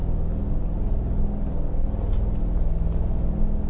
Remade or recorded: recorded